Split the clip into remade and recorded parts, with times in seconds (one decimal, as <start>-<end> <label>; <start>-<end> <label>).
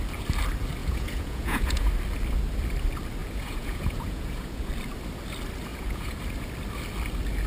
0.0-0.8 recorded; 0.8-1.9 remade; 1.9-3.2 recorded; 3.2-4.7 remade; 4.7-5.7 recorded; 5.7-6.2 remade; 6.2-7.5 recorded